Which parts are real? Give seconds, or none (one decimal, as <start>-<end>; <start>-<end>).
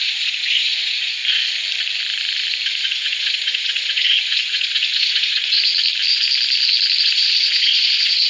1.2-2.8; 5.7-7.0